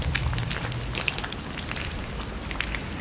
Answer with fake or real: real